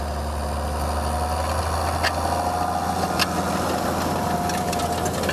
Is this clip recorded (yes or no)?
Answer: yes